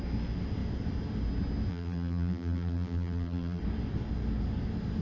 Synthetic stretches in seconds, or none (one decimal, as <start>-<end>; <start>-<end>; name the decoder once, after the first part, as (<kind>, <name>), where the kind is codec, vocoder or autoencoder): 1.7-3.6 (vocoder, BigVGAN v2)